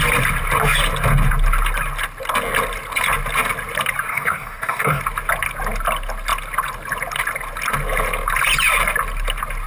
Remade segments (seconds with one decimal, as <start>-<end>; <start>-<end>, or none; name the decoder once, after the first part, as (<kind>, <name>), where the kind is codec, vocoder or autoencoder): 4.1-5.0 (codec, DAC)